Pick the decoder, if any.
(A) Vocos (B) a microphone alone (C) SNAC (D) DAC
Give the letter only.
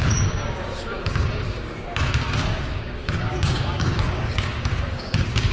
D